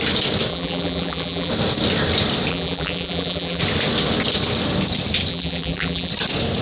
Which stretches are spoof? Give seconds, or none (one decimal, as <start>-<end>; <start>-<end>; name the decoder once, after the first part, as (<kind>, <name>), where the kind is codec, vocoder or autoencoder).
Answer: 0.5-1.5 (vocoder, BigVGAN v2); 2.5-3.6; 5.3-6.1